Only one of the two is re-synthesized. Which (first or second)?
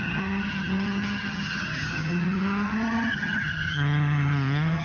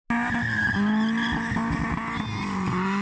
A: first